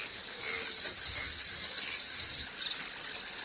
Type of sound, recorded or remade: recorded